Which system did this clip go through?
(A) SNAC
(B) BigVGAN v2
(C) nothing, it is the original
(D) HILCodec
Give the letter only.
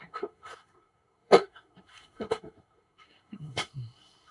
A